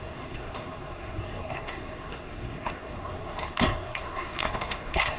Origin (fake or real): fake